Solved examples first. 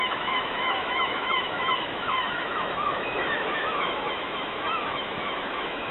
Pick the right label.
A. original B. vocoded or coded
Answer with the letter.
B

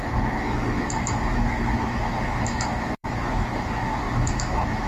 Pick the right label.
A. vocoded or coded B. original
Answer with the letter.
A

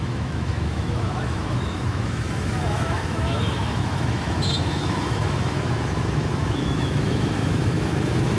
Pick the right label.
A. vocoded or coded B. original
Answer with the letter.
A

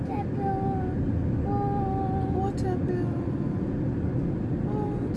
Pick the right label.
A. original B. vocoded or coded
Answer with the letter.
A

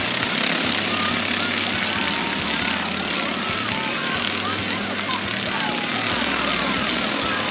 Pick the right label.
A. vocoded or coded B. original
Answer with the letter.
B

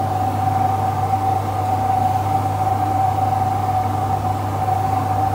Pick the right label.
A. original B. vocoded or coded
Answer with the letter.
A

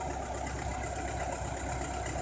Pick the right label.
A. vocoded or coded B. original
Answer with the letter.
B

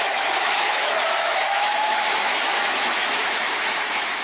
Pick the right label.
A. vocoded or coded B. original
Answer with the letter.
A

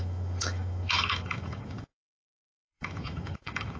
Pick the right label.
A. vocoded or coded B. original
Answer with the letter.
A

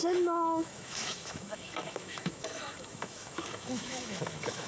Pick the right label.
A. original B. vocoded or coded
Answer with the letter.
B